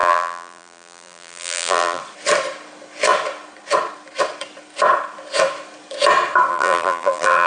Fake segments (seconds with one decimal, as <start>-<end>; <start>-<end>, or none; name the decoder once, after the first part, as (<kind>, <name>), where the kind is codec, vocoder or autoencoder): 0.0-2.0 (vocoder, BigVGAN v2); 6.5-7.5